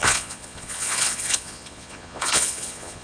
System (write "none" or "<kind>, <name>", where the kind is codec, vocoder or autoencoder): vocoder, Vocos